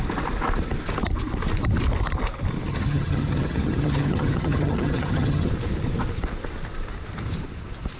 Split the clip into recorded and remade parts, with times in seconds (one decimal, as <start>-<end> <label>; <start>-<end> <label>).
0.0-2.7 recorded; 2.7-5.5 remade; 5.5-8.0 recorded